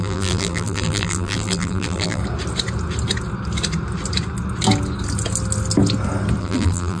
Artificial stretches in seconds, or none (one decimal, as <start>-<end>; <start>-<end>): 0.0-2.2; 6.4-7.0

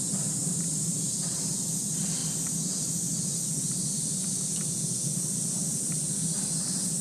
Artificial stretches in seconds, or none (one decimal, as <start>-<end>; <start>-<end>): 0.4-1.5

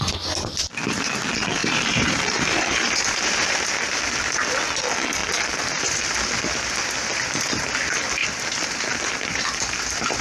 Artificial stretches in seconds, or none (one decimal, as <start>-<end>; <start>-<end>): 1.6-3.6; 8.2-10.2

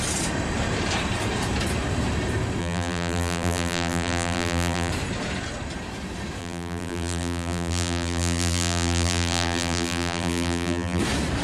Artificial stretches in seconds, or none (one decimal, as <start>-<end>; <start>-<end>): 2.6-4.9; 6.4-11.0

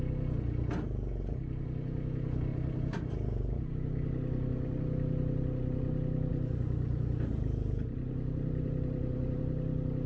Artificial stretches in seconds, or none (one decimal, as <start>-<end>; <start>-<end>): 2.5-3.7; 6.3-9.4

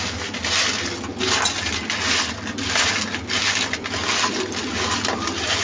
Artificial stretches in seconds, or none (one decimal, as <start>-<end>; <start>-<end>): none

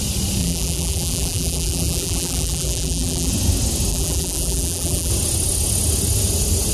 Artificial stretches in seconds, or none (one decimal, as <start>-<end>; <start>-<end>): 0.4-3.3; 3.9-5.1

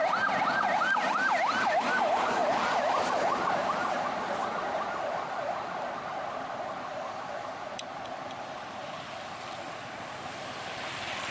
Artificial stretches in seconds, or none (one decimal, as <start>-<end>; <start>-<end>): none